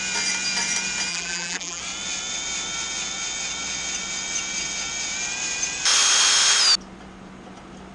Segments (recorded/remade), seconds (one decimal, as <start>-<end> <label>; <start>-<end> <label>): 0.0-1.1 recorded; 1.1-1.8 remade; 1.8-7.9 recorded